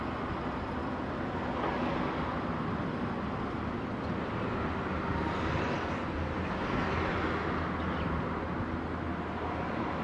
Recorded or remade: recorded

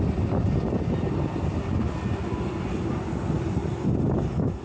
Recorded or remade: recorded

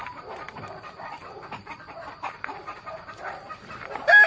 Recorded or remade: remade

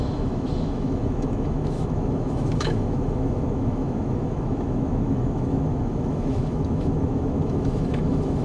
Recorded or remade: remade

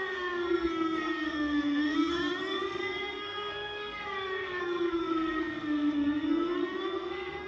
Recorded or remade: remade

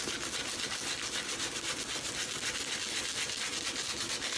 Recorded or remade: recorded